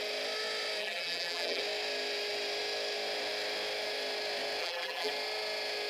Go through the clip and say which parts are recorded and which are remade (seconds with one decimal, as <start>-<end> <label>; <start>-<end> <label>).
0.0-0.8 recorded; 0.8-1.6 remade; 1.6-4.6 recorded; 4.6-5.1 remade; 5.1-5.9 recorded